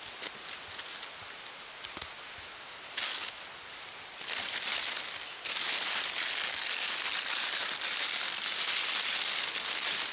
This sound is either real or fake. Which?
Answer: real